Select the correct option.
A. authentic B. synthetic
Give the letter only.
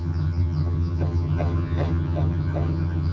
B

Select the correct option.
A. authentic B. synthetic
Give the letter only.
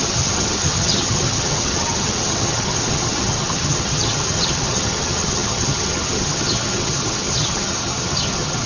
B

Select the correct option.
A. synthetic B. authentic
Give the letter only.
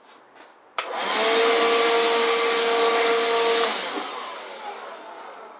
B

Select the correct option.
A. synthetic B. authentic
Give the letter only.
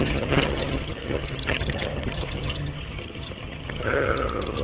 A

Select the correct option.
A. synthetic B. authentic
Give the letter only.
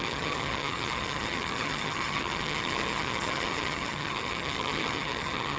A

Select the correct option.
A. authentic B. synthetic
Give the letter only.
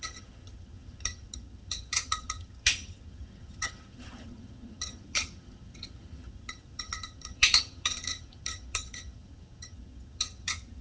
B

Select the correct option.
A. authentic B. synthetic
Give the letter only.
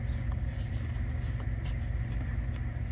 A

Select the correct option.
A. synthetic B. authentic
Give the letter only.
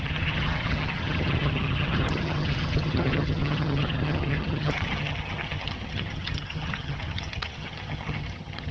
A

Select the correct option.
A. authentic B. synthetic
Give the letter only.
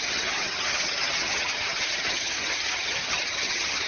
B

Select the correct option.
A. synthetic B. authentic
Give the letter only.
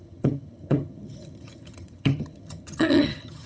A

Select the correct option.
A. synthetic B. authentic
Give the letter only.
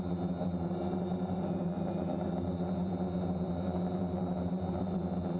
B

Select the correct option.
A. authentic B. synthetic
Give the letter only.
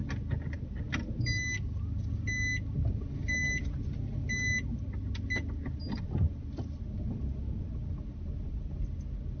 A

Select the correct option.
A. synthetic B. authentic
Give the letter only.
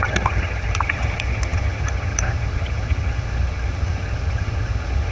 A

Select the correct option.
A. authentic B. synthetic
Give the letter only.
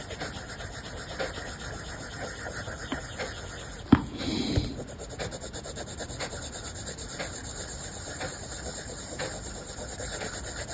A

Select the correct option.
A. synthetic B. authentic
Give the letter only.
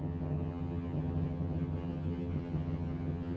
A